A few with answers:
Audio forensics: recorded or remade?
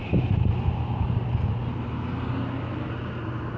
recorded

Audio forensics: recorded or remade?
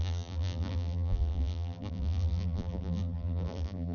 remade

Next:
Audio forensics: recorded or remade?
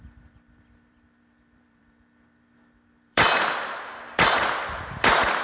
remade